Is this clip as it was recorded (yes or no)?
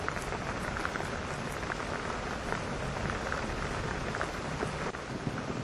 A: yes